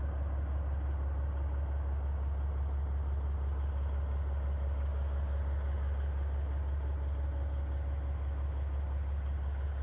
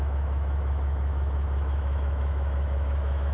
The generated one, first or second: second